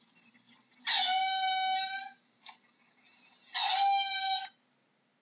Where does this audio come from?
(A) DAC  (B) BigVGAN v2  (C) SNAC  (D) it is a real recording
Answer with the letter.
D